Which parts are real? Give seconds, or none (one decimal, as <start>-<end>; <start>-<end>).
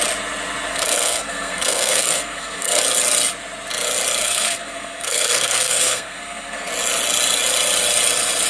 0.0-0.7; 2.8-4.2; 6.7-8.5